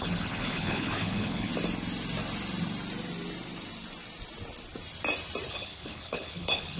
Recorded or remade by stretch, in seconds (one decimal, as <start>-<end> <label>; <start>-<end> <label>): 0.0-1.5 remade; 1.5-5.5 recorded; 5.5-6.8 remade